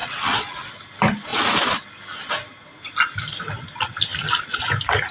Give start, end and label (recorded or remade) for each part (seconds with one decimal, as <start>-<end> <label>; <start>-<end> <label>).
0.0-0.7 remade; 0.7-5.1 recorded